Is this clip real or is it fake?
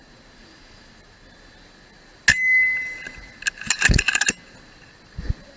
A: real